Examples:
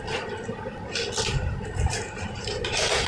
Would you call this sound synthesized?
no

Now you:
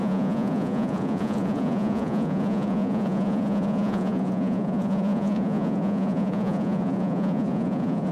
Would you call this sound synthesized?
yes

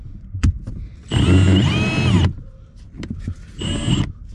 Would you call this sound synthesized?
no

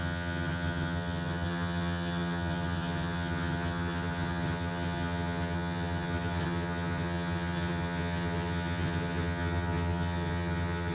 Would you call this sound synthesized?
yes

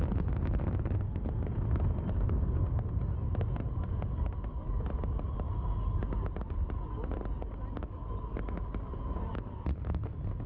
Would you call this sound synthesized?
no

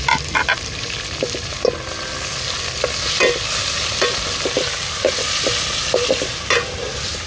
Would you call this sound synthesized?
no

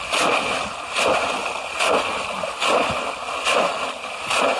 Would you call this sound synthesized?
no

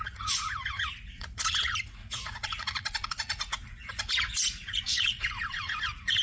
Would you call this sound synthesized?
yes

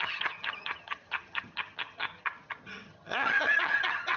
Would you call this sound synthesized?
yes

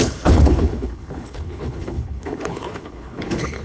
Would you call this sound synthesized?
yes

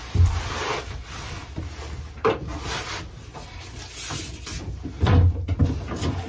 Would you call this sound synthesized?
no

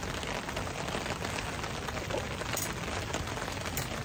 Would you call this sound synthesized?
no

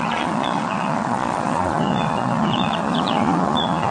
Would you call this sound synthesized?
yes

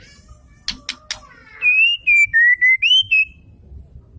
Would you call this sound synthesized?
no